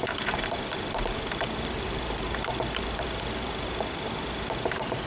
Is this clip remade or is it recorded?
remade